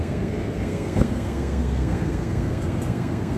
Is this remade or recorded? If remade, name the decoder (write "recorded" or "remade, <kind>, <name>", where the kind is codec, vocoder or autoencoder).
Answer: remade, codec, SNAC